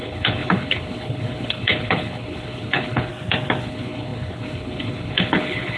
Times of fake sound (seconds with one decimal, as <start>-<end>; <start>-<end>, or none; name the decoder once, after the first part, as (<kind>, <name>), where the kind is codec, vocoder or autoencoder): 0.0-3.1 (codec, HILCodec); 3.6-5.8